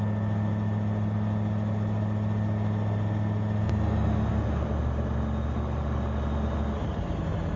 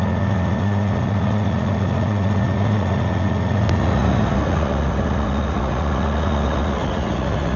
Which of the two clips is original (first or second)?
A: first